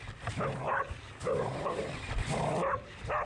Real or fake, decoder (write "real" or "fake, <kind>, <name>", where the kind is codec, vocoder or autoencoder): fake, vocoder, BigVGAN v2